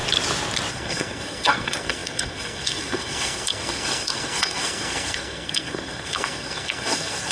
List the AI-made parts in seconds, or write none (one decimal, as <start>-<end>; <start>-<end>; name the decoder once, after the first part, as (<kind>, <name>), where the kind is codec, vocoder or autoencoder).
0.7-7.3 (codec, SNAC)